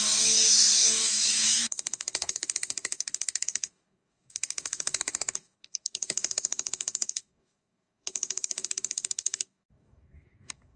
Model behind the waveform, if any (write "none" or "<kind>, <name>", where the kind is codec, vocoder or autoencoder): codec, DAC